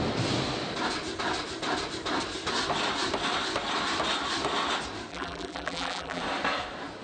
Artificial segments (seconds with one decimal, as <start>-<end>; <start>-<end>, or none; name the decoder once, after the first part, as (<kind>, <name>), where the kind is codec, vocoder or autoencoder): 5.1-6.2 (vocoder, BigVGAN v2)